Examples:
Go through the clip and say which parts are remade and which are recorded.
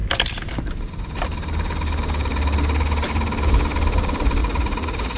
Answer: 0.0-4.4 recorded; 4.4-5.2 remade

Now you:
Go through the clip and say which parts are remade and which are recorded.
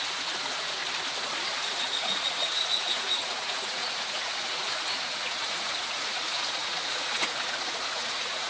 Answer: 0.0-0.8 remade; 0.8-1.8 recorded; 1.8-8.5 remade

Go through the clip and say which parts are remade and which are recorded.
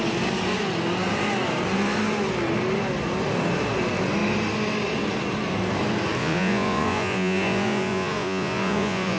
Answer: 0.0-6.2 recorded; 6.2-9.2 remade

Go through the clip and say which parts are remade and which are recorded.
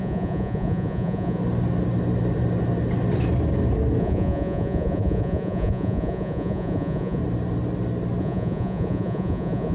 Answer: 0.0-1.4 remade; 1.4-4.0 recorded; 4.0-7.2 remade; 7.2-8.2 recorded; 8.2-9.7 remade